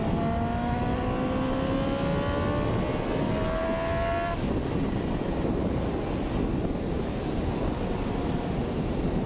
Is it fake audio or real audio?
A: real